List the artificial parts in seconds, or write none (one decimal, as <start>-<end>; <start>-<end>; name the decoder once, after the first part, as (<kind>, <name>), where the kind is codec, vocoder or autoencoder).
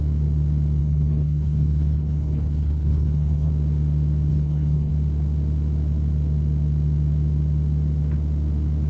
0.8-3.5 (codec, HILCodec); 4.3-4.9